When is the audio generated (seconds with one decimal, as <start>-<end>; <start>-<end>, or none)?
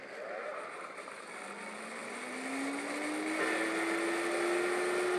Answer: 0.5-1.3